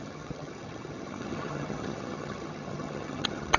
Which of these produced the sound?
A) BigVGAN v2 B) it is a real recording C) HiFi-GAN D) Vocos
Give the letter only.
C